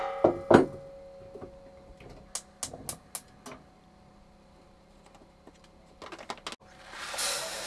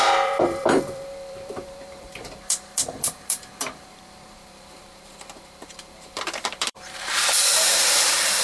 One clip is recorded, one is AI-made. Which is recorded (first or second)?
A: first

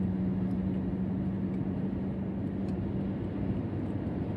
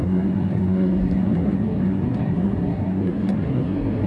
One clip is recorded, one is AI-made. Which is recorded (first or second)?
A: first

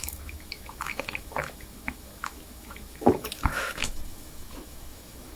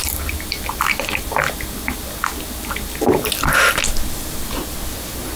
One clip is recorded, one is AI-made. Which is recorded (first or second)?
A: second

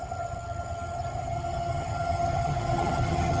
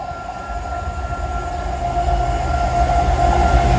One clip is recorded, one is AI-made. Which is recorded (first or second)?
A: second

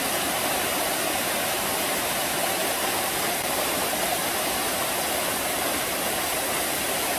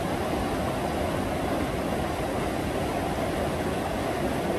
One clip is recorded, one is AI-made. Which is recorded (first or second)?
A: second